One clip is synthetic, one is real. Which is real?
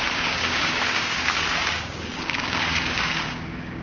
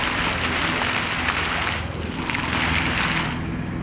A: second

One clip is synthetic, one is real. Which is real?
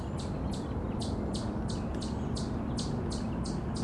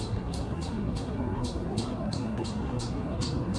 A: first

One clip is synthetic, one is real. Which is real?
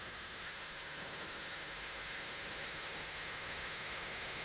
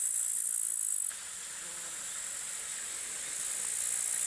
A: second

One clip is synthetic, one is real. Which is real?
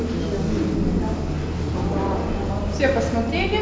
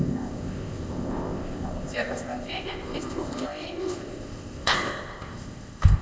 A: first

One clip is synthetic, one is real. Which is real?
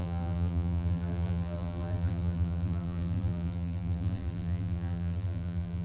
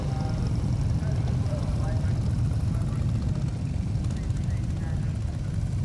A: second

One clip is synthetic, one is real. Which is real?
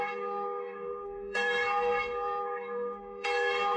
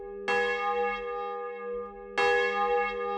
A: second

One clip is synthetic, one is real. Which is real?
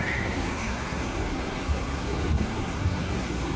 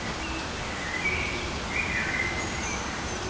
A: second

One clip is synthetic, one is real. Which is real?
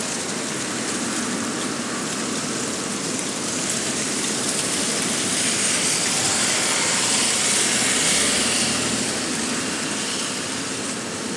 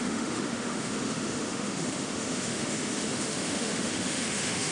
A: first